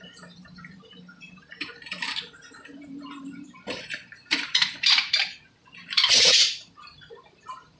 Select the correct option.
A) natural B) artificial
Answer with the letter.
B